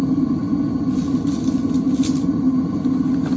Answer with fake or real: real